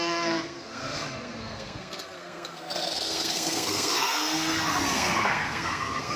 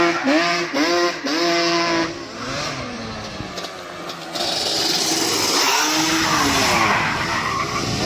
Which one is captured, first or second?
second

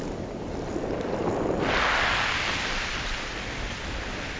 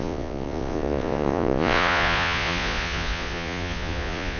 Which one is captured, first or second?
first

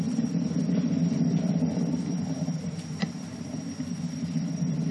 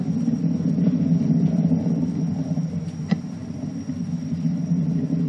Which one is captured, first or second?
second